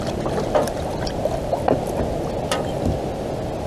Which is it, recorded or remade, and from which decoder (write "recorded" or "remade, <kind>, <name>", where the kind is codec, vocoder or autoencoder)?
recorded